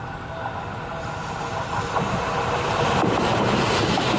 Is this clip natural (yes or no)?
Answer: yes